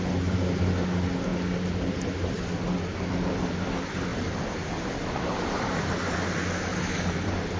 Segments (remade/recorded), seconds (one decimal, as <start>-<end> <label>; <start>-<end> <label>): 0.0-4.1 recorded; 4.1-5.9 remade; 5.9-6.7 recorded; 6.7-7.6 remade